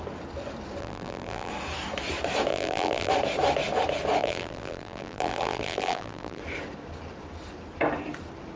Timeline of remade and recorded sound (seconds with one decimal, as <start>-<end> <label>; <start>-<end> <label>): 0.0-0.8 recorded; 0.8-1.5 remade; 1.5-2.5 recorded; 2.5-3.1 remade; 3.1-4.2 recorded; 4.2-6.4 remade; 6.4-8.6 recorded